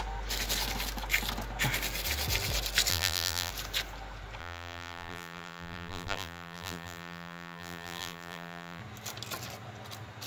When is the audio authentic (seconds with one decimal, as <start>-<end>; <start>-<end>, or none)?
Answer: 0.0-2.9; 3.5-4.4; 8.8-10.3